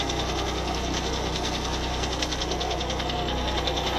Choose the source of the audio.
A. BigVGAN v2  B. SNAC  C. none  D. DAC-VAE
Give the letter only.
B